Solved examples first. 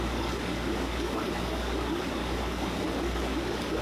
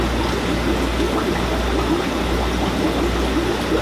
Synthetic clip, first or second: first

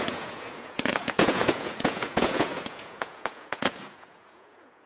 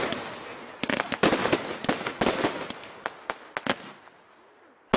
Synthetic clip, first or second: first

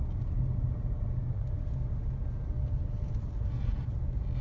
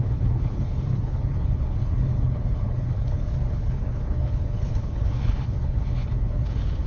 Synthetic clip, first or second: second